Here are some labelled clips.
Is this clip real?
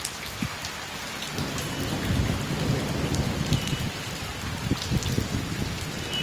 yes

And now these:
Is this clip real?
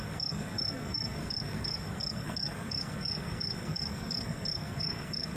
no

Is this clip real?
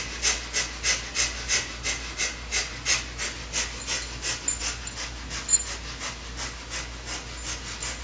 yes